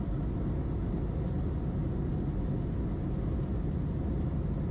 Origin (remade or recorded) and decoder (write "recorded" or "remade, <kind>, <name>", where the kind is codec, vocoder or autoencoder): recorded